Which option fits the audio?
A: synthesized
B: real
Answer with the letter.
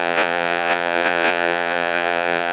A